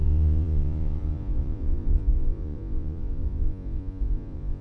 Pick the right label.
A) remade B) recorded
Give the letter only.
A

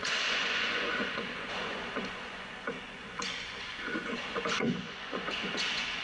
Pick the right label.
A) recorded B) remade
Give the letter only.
B